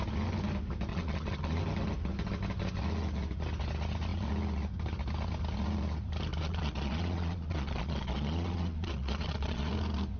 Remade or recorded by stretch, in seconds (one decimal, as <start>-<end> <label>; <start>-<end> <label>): 0.0-0.9 recorded; 0.9-1.6 remade; 1.6-6.4 recorded; 6.4-9.7 remade; 9.7-10.2 recorded